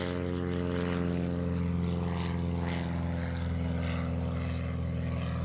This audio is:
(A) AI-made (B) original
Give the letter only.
B